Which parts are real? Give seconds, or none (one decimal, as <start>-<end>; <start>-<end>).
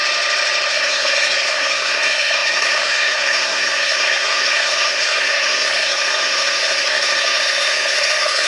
0.0-0.7